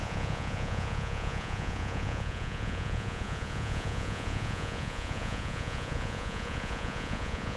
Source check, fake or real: fake